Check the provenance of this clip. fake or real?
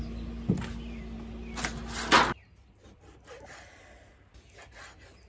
real